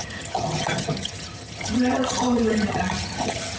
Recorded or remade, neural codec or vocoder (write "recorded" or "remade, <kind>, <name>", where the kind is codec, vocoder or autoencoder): remade, vocoder, HiFi-GAN